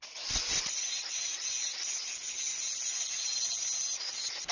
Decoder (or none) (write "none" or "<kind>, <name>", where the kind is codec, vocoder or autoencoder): none